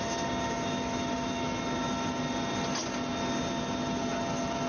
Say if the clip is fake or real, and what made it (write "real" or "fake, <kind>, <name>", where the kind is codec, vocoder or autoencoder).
real